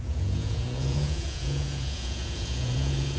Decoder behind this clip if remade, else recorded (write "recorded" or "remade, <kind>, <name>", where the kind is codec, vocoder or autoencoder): remade, vocoder, Vocos